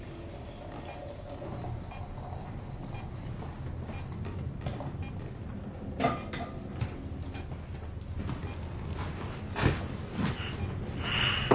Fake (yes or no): no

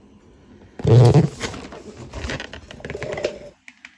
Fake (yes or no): no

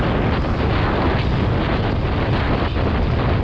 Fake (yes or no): no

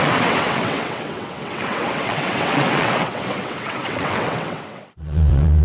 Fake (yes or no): yes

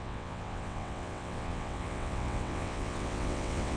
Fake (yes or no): yes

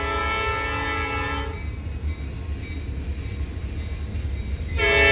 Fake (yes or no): no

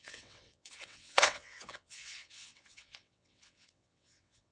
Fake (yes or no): yes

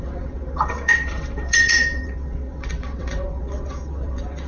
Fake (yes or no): yes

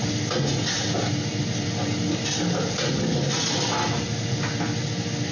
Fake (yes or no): no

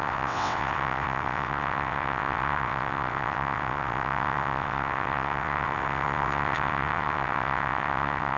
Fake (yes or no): yes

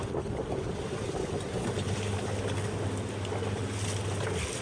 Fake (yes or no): no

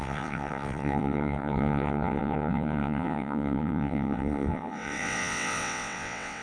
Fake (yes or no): yes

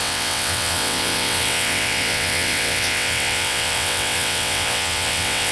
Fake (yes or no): yes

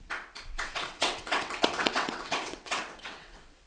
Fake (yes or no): yes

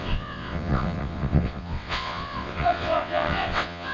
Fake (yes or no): yes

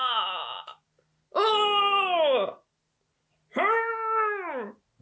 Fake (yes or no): no